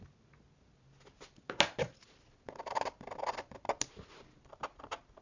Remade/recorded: recorded